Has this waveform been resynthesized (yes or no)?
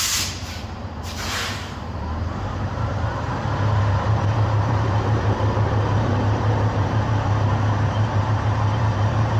yes